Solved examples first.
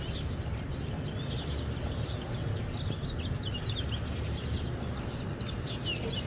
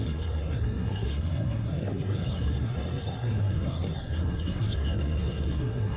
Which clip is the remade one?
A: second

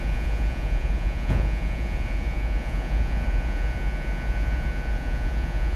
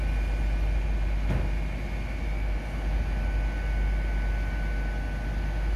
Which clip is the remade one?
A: first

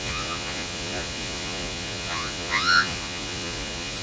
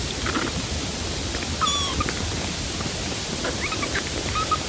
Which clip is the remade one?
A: first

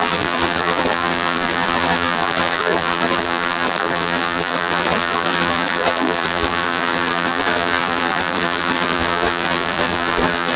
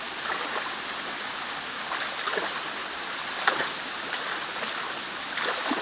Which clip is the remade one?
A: first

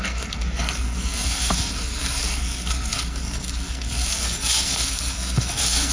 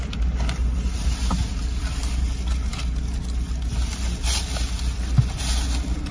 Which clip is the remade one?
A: first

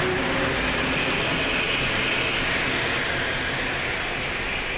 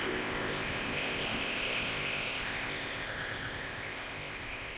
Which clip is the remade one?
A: second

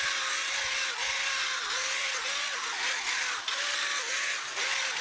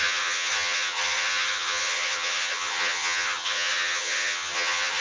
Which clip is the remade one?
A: second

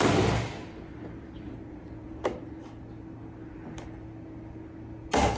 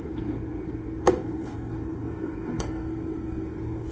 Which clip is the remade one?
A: second